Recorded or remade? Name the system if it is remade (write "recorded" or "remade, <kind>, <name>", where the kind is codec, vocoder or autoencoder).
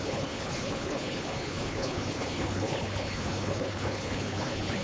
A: remade, codec, HILCodec